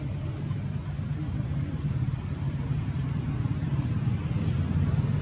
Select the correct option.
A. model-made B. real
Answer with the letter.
B